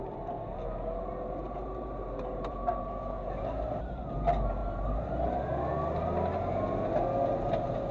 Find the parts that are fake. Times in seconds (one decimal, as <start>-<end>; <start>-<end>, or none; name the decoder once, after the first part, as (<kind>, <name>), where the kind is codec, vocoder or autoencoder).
1.4-2.8 (vocoder, BigVGAN v2); 4.6-5.3